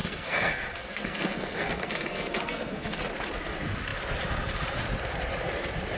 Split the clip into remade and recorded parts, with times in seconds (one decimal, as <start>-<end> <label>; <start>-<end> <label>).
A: 0.0-3.0 remade; 3.0-6.0 recorded